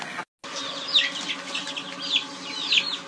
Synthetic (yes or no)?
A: no